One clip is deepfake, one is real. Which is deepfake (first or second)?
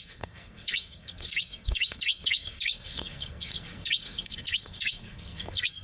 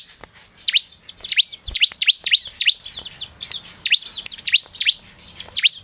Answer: first